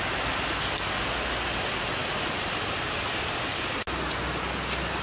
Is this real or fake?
real